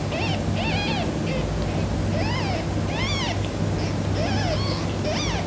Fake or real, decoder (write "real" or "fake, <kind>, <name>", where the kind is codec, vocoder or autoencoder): real